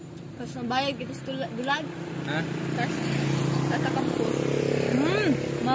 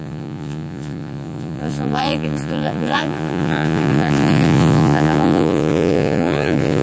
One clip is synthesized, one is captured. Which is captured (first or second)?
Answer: first